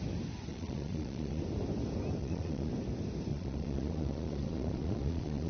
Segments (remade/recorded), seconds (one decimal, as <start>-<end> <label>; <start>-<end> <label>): 0.0-0.5 recorded; 0.5-1.4 remade; 1.4-2.2 recorded; 2.2-2.7 remade; 2.7-3.3 recorded; 3.3-5.5 remade